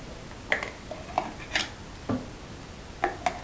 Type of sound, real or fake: real